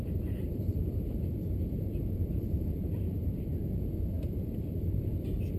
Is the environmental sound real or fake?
fake